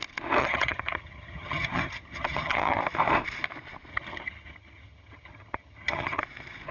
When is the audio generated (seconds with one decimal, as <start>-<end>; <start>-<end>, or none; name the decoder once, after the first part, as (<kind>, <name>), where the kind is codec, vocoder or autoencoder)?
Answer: 0.4-2.8 (vocoder, HiFi-GAN); 3.9-6.2